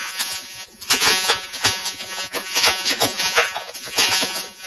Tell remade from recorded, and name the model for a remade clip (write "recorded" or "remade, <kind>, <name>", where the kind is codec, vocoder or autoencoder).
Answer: remade, vocoder, Vocos